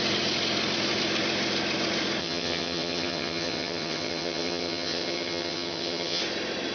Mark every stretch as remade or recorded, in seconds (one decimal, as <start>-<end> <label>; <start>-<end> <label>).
0.0-2.2 recorded; 2.2-6.2 remade; 6.2-6.7 recorded